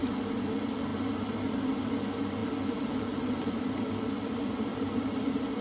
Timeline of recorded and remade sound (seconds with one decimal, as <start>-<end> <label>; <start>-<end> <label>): 0.0-0.5 remade; 0.5-2.4 recorded; 2.4-3.7 remade; 3.7-4.7 recorded; 4.7-5.6 remade